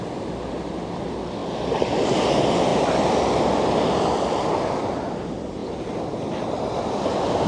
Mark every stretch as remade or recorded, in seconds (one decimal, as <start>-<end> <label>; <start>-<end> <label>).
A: 0.0-7.5 recorded